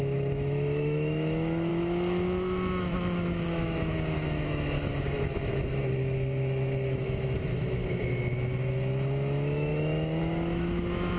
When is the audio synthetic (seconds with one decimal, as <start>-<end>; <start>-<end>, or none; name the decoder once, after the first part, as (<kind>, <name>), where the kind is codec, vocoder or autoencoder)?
0.0-11.2 (autoencoder, DAC-VAE)

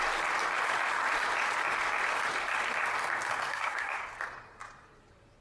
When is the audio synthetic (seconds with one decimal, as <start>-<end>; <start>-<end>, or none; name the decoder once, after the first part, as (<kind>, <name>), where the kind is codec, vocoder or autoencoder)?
3.5-4.0 (codec, SNAC)

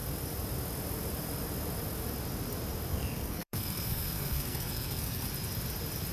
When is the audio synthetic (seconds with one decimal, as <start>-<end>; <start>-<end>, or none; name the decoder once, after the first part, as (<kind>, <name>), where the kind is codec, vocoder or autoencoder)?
2.9-5.3 (codec, SNAC)

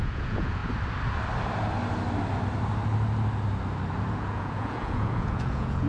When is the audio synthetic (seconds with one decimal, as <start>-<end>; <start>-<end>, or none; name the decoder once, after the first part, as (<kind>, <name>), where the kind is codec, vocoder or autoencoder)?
0.0-0.6 (vocoder, Vocos); 4.1-5.9

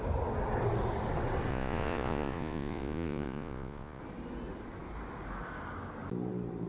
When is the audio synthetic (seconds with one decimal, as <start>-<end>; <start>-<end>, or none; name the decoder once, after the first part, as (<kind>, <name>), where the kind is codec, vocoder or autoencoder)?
1.5-4.0 (vocoder, Vocos)